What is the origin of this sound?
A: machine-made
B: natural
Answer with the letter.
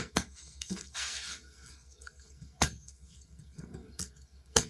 A